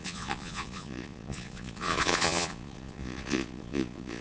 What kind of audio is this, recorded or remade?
remade